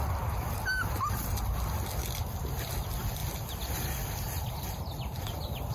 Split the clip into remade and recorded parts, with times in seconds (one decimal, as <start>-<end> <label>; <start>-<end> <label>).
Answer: 0.0-5.7 recorded